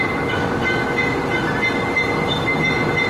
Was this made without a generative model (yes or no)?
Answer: yes